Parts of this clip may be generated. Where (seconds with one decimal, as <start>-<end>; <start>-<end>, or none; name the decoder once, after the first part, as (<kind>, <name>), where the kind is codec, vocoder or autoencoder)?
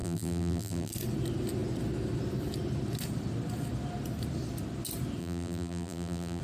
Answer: 0.0-0.9 (vocoder, BigVGAN v2); 5.2-6.4